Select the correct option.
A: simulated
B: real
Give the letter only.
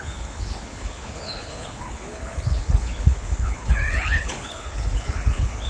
A